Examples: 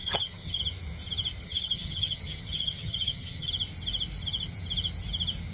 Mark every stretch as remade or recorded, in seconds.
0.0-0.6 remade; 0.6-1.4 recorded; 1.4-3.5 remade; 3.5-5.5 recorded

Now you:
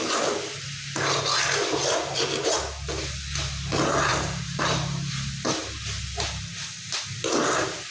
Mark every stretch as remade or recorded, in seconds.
0.0-4.1 recorded; 4.1-5.3 remade; 5.3-7.9 recorded

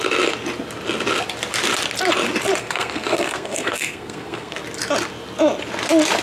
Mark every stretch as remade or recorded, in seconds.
0.0-2.6 recorded; 2.6-4.6 remade; 4.6-6.2 recorded

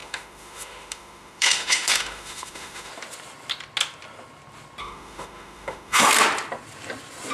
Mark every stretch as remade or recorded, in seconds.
0.0-2.9 remade; 2.9-4.8 recorded; 4.8-6.1 remade; 6.1-7.3 recorded

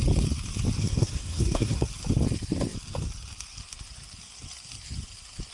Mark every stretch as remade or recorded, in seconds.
0.0-0.8 recorded; 0.8-1.9 remade; 1.9-5.5 recorded

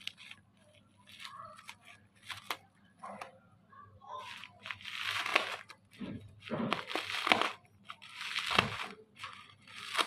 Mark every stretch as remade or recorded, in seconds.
0.0-10.1 recorded

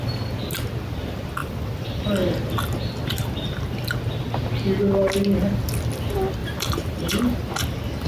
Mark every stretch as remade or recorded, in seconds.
0.0-1.4 recorded; 1.4-2.0 remade; 2.0-6.4 recorded; 6.4-7.5 remade; 7.5-8.1 recorded

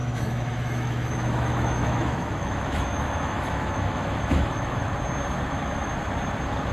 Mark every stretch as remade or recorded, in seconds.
0.0-4.9 remade; 4.9-5.5 recorded; 5.5-5.9 remade; 5.9-6.7 recorded